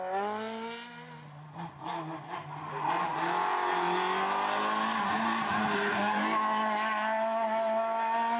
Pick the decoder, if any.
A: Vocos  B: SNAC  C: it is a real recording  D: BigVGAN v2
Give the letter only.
C